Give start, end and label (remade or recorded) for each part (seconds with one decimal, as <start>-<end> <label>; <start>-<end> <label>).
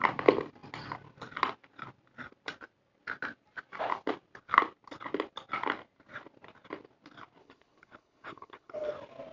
0.0-7.4 recorded; 7.4-8.9 remade; 8.9-9.3 recorded